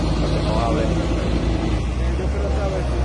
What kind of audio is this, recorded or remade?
recorded